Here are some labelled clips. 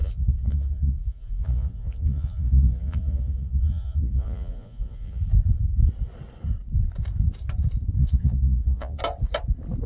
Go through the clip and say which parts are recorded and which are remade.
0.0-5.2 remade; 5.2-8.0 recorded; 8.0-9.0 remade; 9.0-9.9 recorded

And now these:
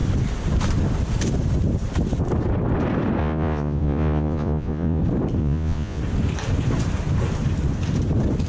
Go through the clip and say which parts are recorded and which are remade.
0.0-3.2 recorded; 3.2-5.0 remade; 5.0-5.4 recorded; 5.4-6.0 remade; 6.0-8.5 recorded